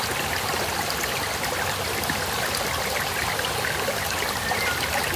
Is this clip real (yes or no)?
yes